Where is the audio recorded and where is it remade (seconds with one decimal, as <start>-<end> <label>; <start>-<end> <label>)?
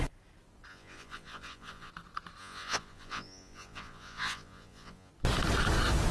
0.0-0.7 recorded; 0.7-1.9 remade; 1.9-2.4 recorded; 2.4-5.1 remade; 5.1-6.1 recorded